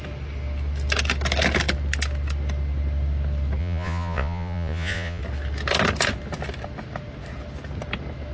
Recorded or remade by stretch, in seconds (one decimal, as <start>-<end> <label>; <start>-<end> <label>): 0.0-3.6 recorded; 3.6-5.2 remade; 5.2-8.3 recorded